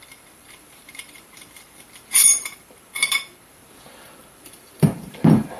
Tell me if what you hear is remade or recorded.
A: remade